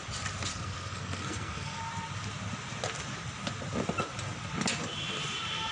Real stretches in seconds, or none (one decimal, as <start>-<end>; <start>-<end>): 0.0-0.5; 1.8-5.7